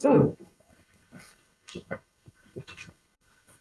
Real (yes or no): no